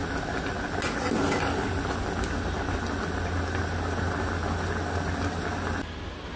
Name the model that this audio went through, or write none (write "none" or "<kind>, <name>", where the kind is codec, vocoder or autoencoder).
none